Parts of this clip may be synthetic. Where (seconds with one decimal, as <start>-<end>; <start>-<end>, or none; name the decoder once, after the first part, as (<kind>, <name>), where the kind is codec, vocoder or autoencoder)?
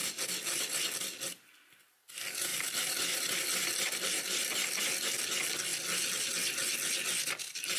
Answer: 2.5-4.8 (vocoder, BigVGAN v2)